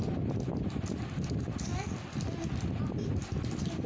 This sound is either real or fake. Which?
fake